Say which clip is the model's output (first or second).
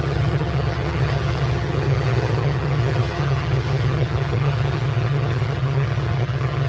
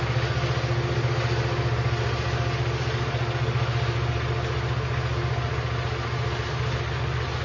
first